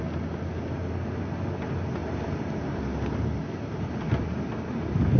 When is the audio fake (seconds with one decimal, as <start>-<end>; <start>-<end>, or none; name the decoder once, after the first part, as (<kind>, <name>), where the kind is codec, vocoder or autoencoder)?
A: none